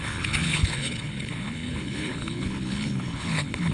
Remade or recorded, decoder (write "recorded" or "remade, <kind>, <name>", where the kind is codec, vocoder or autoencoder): remade, codec, HILCodec